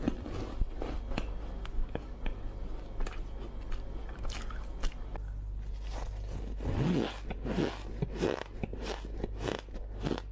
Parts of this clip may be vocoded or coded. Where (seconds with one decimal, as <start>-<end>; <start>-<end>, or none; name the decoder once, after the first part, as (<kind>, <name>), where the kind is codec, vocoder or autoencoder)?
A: 1.7-2.2 (codec, DAC)